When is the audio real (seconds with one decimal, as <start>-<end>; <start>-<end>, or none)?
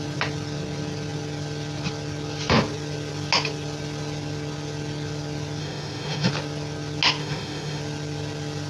0.0-5.6; 6.3-7.2; 7.8-8.7